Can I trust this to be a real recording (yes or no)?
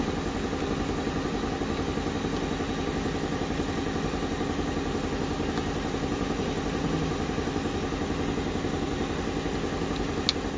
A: yes